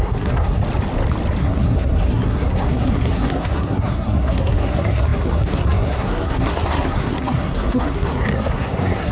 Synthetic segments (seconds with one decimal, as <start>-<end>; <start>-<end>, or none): 0.0-0.6; 1.4-9.1